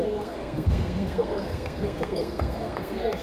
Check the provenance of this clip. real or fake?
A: fake